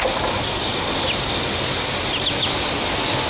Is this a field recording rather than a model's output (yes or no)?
yes